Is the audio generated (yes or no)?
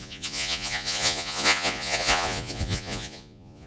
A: yes